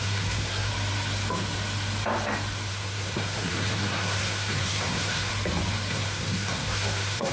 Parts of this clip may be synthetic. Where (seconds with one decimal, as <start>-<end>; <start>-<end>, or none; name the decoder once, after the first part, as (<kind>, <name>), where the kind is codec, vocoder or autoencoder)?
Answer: 0.0-0.7 (codec, SNAC); 2.7-5.3; 5.9-7.3